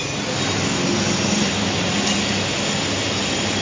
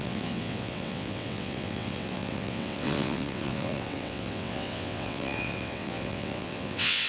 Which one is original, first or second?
first